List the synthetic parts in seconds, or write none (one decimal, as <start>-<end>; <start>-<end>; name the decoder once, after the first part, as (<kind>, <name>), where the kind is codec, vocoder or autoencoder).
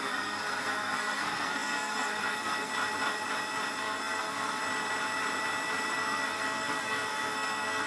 0.0-2.7 (codec, SNAC); 3.8-4.6; 5.9-7.9